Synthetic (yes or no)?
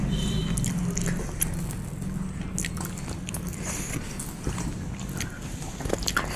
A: no